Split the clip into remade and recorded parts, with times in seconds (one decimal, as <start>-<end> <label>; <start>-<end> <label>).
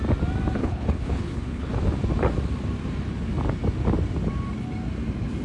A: 0.0-0.6 recorded; 0.6-1.7 remade; 1.7-5.4 recorded